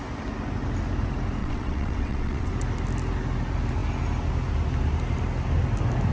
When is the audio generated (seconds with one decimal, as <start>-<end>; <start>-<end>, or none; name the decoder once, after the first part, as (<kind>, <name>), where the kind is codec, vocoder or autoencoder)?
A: 1.4-2.5 (vocoder, WaveNeXt)